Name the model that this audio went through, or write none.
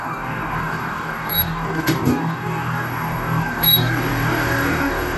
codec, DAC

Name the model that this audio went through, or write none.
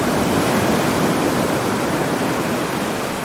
vocoder, BigVGAN v2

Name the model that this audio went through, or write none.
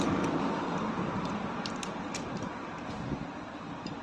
none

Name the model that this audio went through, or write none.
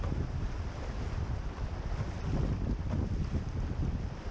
none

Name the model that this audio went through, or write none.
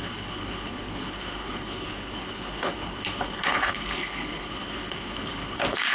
codec, HILCodec